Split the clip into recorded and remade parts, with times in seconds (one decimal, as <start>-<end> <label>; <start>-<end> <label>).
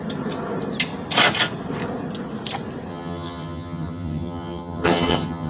0.0-2.9 recorded; 2.9-5.5 remade